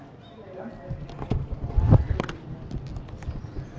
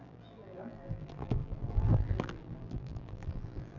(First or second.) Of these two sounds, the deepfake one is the second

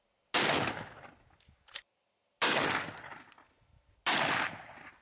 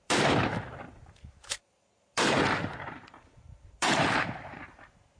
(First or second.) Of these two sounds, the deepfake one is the second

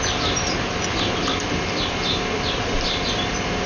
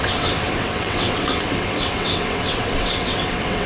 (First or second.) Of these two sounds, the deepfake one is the second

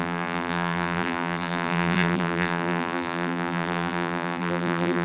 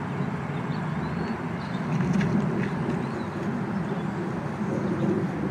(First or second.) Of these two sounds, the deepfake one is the first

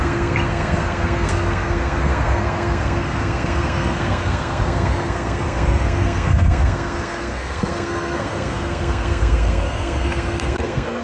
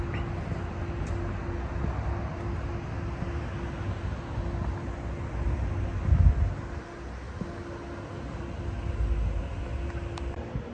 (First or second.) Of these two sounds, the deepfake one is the first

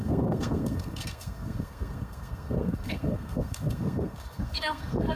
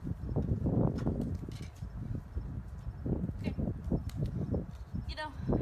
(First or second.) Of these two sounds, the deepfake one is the first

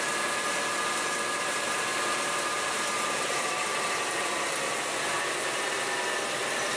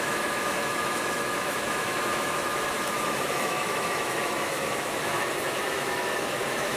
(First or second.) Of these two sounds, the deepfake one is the second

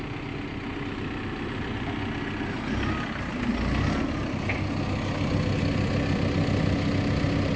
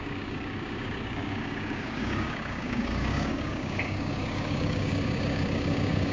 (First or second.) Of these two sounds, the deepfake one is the second